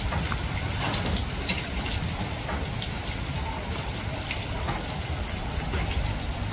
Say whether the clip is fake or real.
real